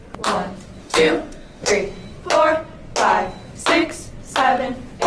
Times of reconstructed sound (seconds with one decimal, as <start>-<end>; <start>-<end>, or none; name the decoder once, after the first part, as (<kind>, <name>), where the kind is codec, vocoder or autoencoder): 0.8-1.7 (autoencoder, DAC-VAE)